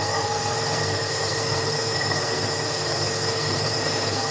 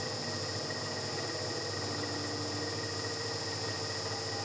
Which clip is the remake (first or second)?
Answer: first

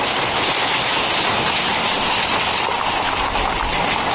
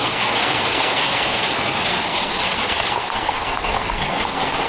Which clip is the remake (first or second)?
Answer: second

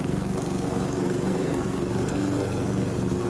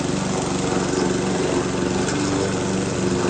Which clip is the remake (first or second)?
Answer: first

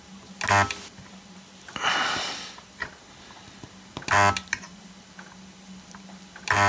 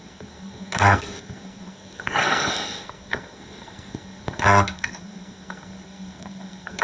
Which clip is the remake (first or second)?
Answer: second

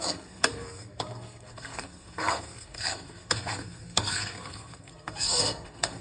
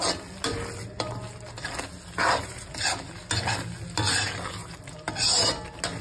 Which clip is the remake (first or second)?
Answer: first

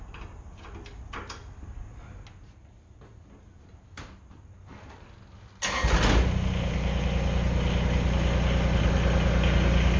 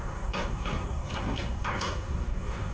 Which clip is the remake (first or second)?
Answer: second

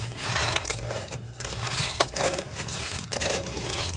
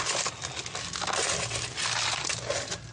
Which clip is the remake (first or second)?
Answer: first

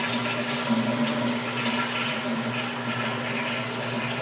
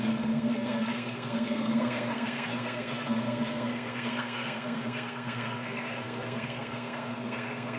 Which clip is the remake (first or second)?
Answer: second